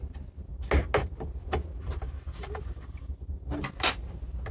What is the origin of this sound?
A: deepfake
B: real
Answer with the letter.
B